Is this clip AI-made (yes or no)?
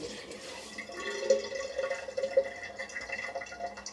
no